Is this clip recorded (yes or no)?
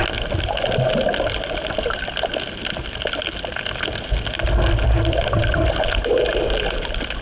yes